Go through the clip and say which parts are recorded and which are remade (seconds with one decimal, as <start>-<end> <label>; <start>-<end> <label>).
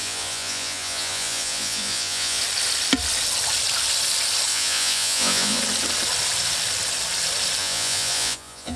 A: 0.0-2.4 remade; 2.4-4.5 recorded; 4.5-5.6 remade; 5.6-7.6 recorded; 7.6-8.8 remade